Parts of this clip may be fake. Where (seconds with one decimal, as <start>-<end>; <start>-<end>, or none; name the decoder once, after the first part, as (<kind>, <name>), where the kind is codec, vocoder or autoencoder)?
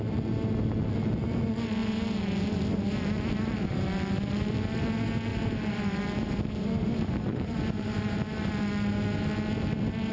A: 1.8-3.8 (vocoder, BigVGAN v2); 5.3-8.5